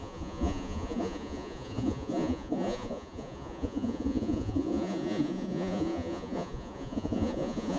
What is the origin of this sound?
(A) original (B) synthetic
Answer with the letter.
B